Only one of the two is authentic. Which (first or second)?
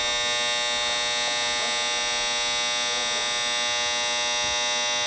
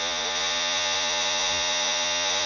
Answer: first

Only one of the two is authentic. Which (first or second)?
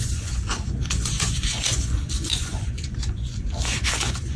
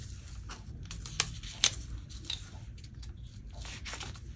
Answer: second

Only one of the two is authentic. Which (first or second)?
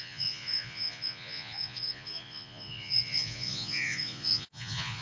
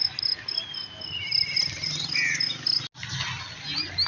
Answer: second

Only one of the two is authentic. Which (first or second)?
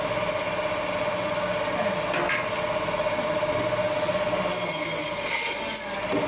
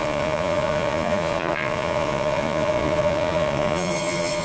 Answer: first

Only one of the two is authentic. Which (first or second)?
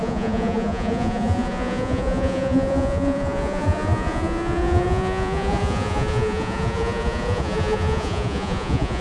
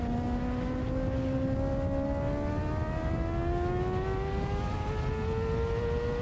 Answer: second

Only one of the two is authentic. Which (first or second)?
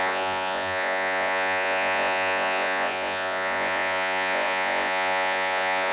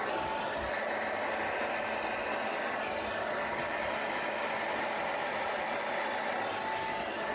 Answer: second